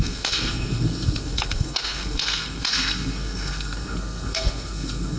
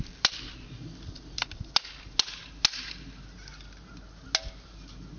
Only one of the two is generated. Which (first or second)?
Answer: first